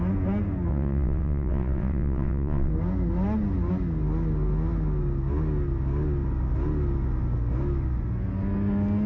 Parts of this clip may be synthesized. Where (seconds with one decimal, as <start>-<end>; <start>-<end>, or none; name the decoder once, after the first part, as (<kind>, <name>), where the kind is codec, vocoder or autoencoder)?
0.7-2.7 (vocoder, WaveNeXt)